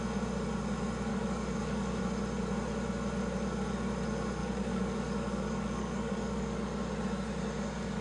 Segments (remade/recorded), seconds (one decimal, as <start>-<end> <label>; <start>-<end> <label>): 0.0-1.1 recorded; 1.1-2.0 remade; 2.0-4.4 recorded; 4.4-6.5 remade; 6.5-8.0 recorded